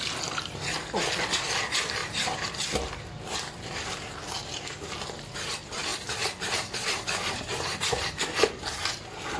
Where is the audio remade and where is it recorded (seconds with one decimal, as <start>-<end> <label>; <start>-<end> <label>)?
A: 0.0-9.4 recorded